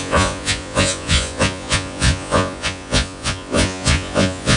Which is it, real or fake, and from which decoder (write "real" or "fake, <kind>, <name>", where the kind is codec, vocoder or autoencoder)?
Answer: fake, vocoder, Vocos